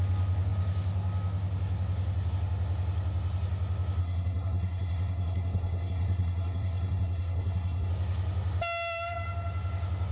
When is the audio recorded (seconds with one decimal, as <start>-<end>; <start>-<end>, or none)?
0.0-4.0; 7.9-10.1